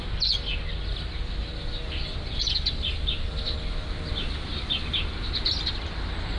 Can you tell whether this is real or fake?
real